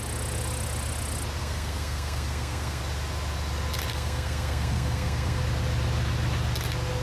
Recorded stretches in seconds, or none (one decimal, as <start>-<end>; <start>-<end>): 0.0-1.4; 2.8-3.9; 5.4-7.0